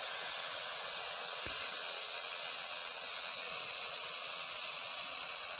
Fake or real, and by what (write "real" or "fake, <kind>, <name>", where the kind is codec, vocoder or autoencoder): fake, vocoder, WaveNeXt